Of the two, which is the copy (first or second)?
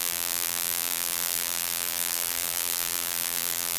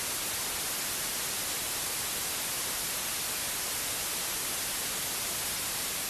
first